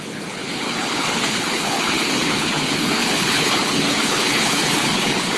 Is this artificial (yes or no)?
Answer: yes